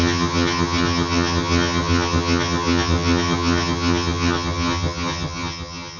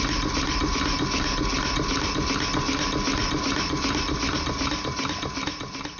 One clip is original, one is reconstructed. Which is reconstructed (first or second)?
first